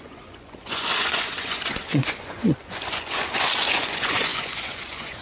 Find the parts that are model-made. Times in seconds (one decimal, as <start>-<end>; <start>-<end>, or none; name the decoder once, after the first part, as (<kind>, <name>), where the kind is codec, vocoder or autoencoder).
0.0-5.2 (vocoder, Vocos)

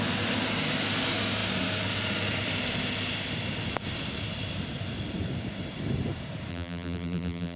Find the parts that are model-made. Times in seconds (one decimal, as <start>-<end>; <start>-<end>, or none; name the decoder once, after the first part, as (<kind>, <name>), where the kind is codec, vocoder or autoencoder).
6.5-7.6 (vocoder, BigVGAN v2)